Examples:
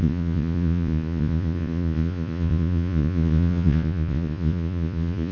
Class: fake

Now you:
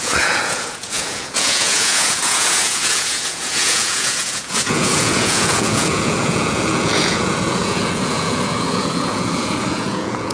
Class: fake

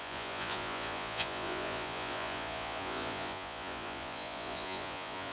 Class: fake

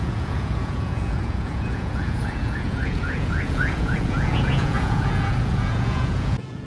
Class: fake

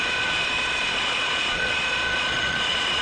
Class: fake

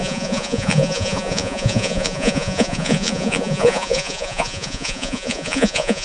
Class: fake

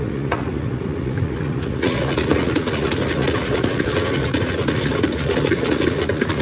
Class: fake